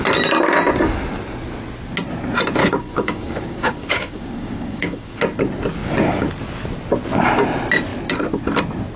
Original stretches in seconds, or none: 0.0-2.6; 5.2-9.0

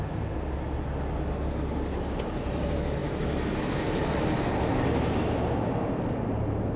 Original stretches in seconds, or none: 0.0-6.8

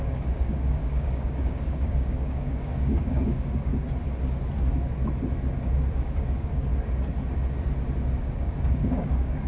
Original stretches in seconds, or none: 3.7-5.9; 6.7-8.2

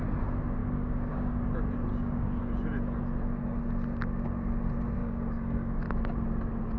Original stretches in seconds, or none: 0.0-0.6; 1.4-1.9; 2.4-5.0; 5.8-6.8